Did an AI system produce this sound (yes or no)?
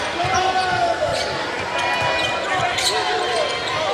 no